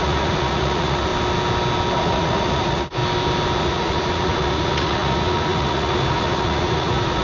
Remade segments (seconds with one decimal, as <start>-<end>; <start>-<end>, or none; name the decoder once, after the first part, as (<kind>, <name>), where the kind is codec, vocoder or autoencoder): 0.0-1.1 (vocoder, Vocos); 2.0-3.0; 3.6-7.2